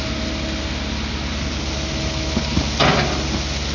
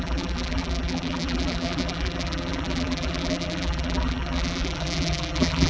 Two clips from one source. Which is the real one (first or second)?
first